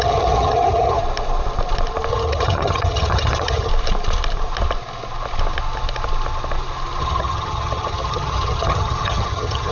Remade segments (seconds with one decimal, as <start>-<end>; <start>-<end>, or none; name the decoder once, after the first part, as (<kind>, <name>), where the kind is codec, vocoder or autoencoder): 0.0-1.0 (vocoder, HiFi-GAN); 2.1-3.7; 7.0-9.7